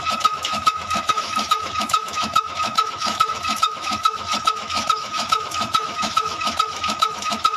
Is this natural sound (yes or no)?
no